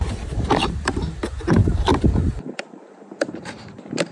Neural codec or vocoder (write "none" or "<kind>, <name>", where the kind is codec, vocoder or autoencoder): vocoder, BigVGAN v2